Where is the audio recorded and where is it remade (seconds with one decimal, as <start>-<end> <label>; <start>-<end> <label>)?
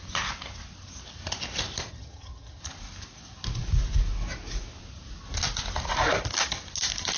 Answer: 0.0-1.9 recorded; 1.9-2.6 remade; 2.6-7.2 recorded